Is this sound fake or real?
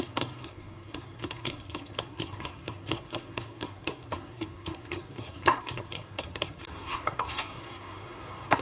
fake